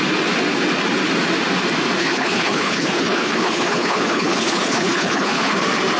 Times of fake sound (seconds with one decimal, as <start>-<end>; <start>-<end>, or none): 2.0-5.6